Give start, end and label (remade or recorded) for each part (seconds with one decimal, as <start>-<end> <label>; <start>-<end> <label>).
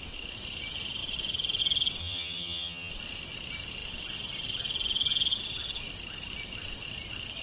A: 0.0-2.0 recorded; 2.0-2.9 remade; 2.9-7.4 recorded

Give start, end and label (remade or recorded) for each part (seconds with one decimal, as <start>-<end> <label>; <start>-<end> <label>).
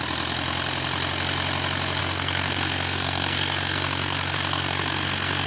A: 0.0-2.0 recorded; 2.0-5.5 remade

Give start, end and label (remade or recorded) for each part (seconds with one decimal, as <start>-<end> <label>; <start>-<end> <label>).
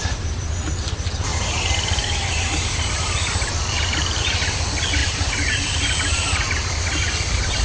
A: 0.0-1.3 recorded; 1.3-4.2 remade; 4.2-5.0 recorded; 5.0-7.6 remade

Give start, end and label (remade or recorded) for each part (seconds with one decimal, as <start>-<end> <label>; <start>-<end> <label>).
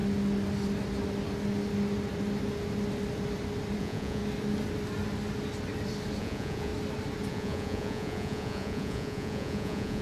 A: 0.0-3.8 recorded; 3.8-4.2 remade; 4.2-6.2 recorded; 6.2-6.7 remade; 6.7-7.3 recorded; 7.3-10.0 remade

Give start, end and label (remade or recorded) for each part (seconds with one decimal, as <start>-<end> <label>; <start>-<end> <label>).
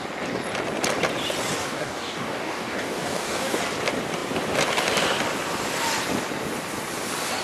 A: 0.0-1.6 recorded; 1.6-3.6 remade; 3.6-7.4 recorded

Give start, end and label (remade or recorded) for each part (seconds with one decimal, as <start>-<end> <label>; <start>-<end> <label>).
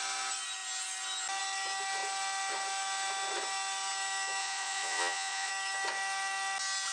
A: 0.0-4.4 recorded; 4.4-5.5 remade; 5.5-6.9 recorded